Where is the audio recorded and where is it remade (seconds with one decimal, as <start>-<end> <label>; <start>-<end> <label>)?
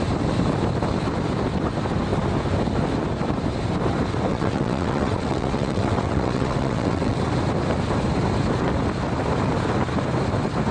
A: 0.0-4.3 recorded; 4.3-7.2 remade; 7.2-10.7 recorded